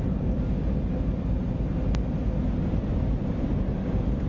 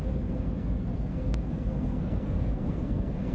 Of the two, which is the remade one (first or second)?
second